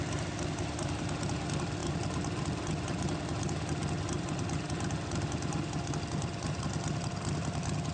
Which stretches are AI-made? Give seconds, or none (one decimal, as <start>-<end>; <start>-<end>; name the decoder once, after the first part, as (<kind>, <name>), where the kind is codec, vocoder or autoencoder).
none